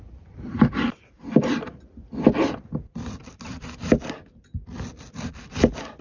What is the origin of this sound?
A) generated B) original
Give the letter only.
B